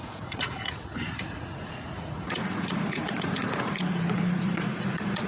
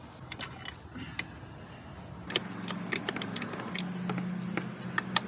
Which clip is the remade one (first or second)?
first